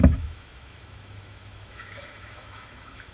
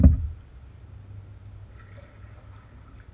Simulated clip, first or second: first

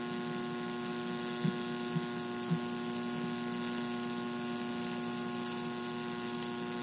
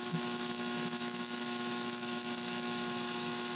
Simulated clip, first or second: second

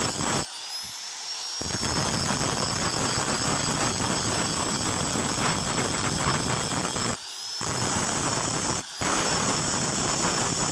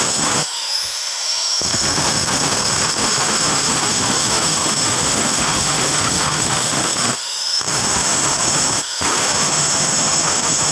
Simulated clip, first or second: second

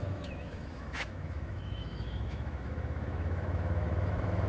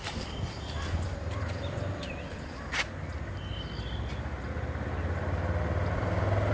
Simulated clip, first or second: first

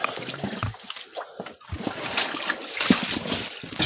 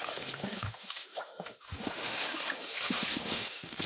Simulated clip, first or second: second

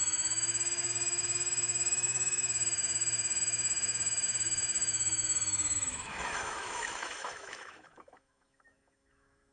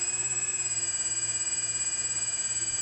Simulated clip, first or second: first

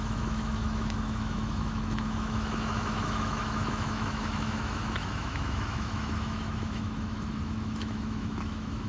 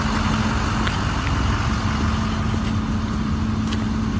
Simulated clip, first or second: first